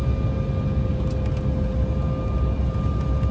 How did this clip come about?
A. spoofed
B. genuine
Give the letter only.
B